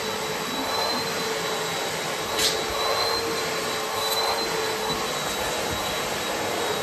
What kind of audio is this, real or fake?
real